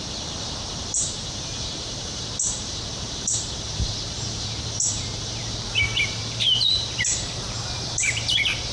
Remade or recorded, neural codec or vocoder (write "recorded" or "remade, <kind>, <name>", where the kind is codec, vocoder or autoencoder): remade, vocoder, BigVGAN v2